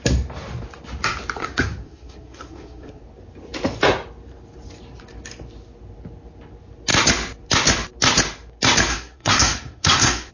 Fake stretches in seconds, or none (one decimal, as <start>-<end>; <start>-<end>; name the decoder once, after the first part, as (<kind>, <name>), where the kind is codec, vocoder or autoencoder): 1.4-3.0 (codec, SNAC); 8.9-10.3